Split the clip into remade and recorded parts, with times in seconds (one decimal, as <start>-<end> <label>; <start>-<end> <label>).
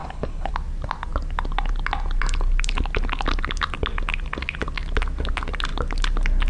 0.0-0.5 remade; 0.5-6.5 recorded